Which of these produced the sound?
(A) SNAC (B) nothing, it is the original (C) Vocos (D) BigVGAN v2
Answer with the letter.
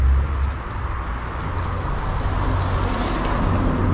B